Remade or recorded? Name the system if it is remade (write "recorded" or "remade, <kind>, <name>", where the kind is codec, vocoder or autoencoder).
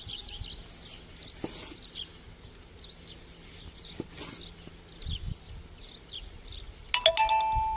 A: recorded